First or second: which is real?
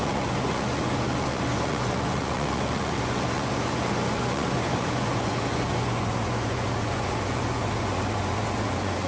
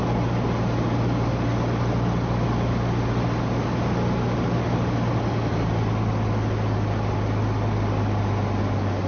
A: second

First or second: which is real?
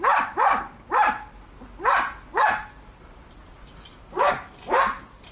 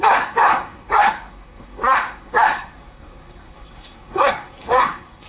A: first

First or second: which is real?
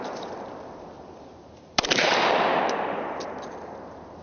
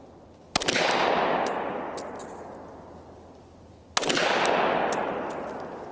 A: second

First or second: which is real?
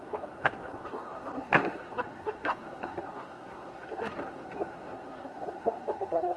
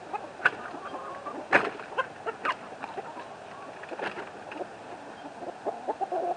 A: second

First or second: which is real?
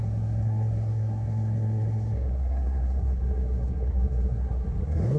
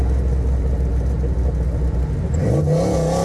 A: second